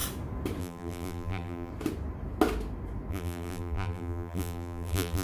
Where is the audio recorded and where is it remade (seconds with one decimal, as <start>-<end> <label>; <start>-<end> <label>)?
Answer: 0.0-0.6 recorded; 0.6-1.7 remade; 1.7-3.1 recorded; 3.1-5.2 remade

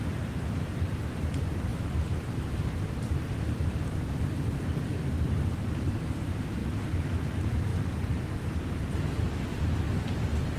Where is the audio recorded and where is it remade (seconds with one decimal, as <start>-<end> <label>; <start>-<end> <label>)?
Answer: 0.0-6.6 remade; 6.6-7.2 recorded; 7.2-10.6 remade

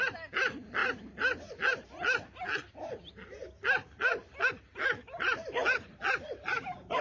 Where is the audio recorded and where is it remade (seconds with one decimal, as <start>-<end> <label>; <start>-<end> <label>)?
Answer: 0.0-0.8 remade; 0.8-4.5 recorded; 4.5-5.6 remade; 5.6-6.5 recorded; 6.5-7.0 remade

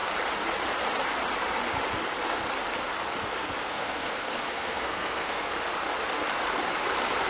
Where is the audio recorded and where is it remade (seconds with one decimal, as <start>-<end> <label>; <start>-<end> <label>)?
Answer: 0.0-3.7 recorded; 3.7-5.5 remade; 5.5-7.3 recorded

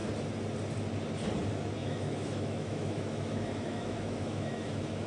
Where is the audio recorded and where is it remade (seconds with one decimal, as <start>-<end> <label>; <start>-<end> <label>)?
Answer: 0.0-1.8 recorded; 1.8-5.1 remade

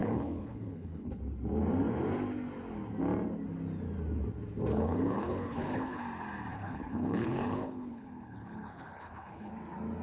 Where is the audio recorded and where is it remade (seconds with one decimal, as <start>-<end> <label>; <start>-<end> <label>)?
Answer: 0.0-1.2 remade; 1.2-4.7 recorded; 4.7-6.0 remade; 6.0-6.5 recorded; 6.5-9.5 remade; 9.5-10.0 recorded

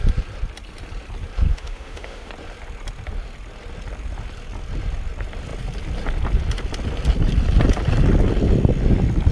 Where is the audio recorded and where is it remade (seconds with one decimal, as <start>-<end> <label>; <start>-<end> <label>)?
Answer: 0.0-1.5 recorded; 1.5-2.3 remade; 2.3-9.3 recorded

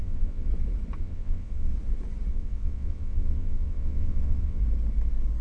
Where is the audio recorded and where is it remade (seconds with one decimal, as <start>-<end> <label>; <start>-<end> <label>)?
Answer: 0.0-0.5 remade; 0.5-1.0 recorded; 1.0-1.7 remade; 1.7-2.3 recorded; 2.3-4.6 remade; 4.6-5.4 recorded